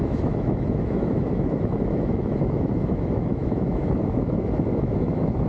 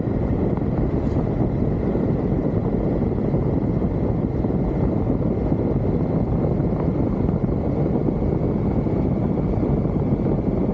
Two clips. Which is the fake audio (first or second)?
first